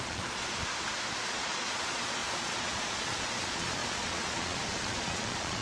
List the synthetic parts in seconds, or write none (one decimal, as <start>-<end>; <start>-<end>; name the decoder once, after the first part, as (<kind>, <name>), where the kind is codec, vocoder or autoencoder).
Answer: 0.0-0.7 (vocoder, Vocos); 1.2-5.6